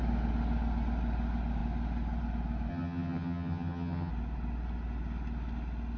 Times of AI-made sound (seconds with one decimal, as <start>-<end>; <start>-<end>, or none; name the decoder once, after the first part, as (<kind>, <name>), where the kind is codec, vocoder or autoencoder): 2.7-4.1 (vocoder, HiFi-GAN)

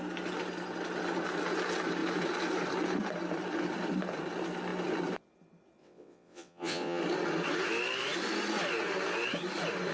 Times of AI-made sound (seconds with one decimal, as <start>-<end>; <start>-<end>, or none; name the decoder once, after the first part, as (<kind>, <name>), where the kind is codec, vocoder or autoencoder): 5.8-7.0 (vocoder, WaveNeXt)